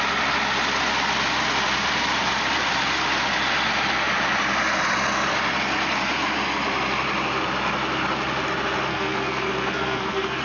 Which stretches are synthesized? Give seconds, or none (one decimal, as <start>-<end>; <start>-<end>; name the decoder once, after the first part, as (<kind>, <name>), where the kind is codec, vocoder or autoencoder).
8.9-10.4 (codec, SNAC)